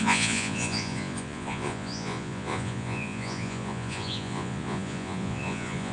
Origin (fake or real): fake